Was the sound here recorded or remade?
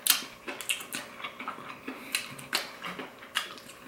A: recorded